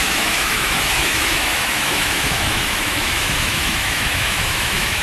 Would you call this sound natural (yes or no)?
no